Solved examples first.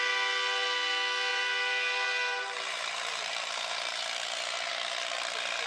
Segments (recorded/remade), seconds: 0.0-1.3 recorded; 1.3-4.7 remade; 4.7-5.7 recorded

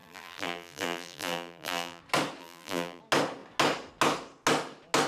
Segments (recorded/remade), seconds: 0.0-2.0 remade; 2.0-2.4 recorded; 2.4-3.0 remade; 3.0-5.1 recorded

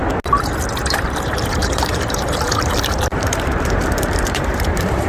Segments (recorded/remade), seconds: 0.0-0.8 recorded; 0.8-5.1 remade